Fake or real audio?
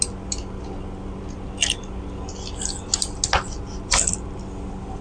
real